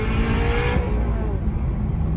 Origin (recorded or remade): recorded